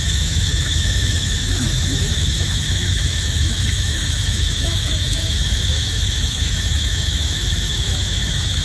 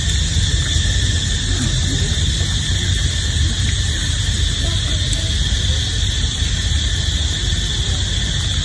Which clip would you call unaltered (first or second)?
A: second